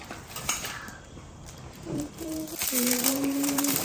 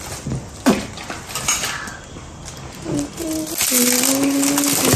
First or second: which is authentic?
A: second